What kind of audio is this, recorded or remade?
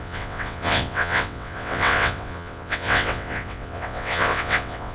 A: remade